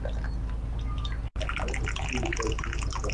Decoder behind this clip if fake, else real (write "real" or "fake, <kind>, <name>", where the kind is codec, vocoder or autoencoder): real